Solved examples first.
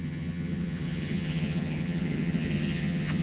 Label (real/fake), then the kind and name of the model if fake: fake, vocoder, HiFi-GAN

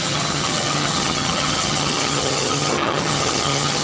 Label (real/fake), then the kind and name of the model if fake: fake, vocoder, HiFi-GAN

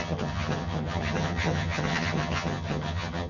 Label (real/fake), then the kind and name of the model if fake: fake, vocoder, HiFi-GAN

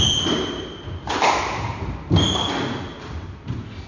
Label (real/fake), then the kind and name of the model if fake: real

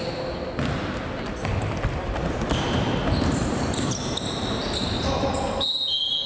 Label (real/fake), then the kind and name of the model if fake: real